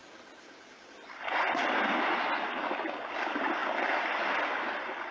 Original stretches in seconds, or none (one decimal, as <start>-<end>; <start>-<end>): 0.0-5.1